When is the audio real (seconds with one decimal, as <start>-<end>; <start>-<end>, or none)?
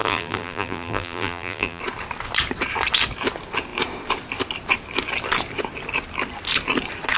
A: 1.8-7.2